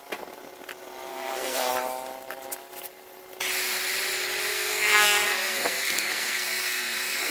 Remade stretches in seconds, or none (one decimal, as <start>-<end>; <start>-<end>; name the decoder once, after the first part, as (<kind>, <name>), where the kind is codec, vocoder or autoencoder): 1.1-1.7 (codec, SNAC); 4.5-7.3